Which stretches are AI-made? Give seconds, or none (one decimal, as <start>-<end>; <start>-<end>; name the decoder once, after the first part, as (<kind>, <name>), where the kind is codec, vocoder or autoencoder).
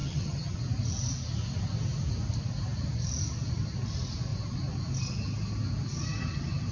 0.0-0.6 (vocoder, HiFi-GAN)